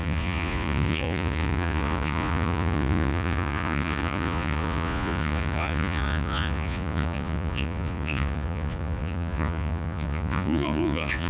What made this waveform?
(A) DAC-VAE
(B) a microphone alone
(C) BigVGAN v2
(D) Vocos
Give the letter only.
D